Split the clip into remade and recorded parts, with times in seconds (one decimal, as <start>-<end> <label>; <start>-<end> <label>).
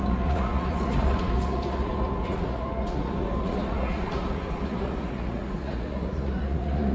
0.0-6.9 remade